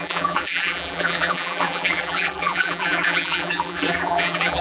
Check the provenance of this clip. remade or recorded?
remade